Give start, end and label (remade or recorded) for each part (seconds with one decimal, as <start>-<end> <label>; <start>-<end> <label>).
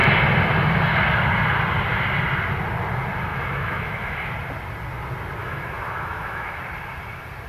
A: 0.0-3.3 recorded; 3.3-4.3 remade; 4.3-5.4 recorded; 5.4-6.6 remade; 6.6-7.5 recorded